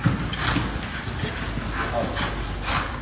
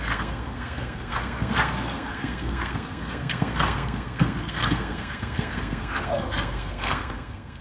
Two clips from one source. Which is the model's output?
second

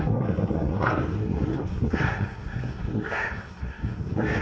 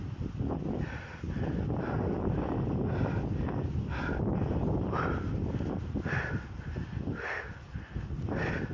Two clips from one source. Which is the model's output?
first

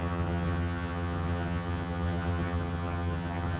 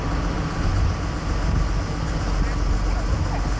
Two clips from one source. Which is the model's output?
first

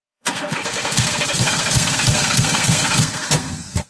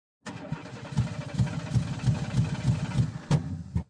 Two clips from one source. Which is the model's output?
first